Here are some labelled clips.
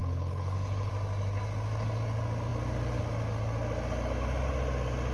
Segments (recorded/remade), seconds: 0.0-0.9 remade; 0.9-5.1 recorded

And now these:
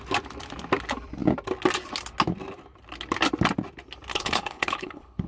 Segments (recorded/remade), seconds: 0.0-4.1 recorded; 4.1-5.3 remade

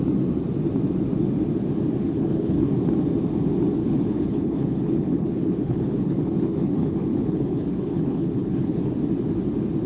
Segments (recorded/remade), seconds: 0.0-2.0 recorded; 2.0-2.7 remade; 2.7-3.8 recorded; 3.8-8.9 remade; 8.9-9.9 recorded

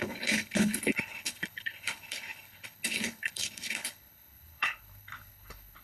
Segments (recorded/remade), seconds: 0.0-5.8 remade

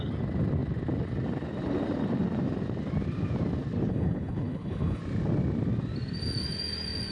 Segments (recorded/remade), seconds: 0.0-3.9 recorded; 3.9-5.0 remade; 5.0-7.1 recorded

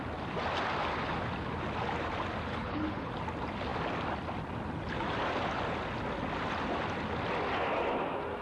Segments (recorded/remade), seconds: 0.0-2.5 recorded; 2.5-3.1 remade; 3.1-8.4 recorded